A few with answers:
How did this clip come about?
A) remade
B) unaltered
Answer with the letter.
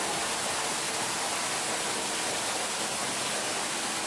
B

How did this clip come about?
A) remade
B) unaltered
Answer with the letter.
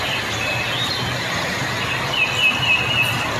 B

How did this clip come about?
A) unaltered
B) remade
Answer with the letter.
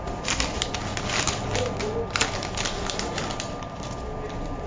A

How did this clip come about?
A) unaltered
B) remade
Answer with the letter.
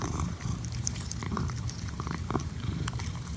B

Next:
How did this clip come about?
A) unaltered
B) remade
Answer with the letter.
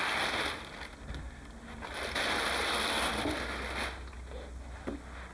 A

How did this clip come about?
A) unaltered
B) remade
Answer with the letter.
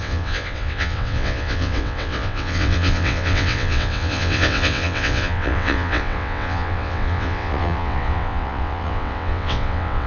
B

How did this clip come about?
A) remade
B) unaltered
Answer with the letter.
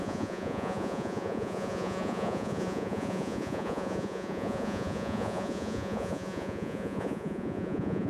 A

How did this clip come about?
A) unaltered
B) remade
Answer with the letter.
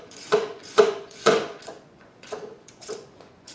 B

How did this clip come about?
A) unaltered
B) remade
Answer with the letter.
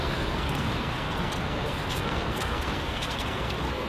B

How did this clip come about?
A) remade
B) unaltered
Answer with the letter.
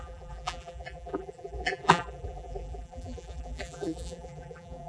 A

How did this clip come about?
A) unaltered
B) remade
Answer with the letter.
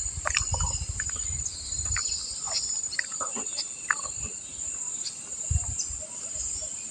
A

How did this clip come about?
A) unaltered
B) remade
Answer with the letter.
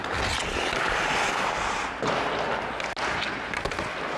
A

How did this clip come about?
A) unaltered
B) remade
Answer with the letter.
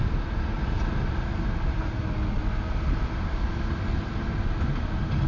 A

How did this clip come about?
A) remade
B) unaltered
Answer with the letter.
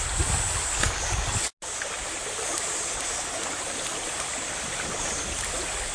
B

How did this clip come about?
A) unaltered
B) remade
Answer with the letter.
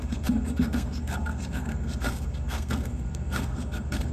B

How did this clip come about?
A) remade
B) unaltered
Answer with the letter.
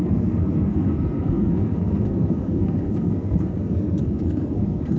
A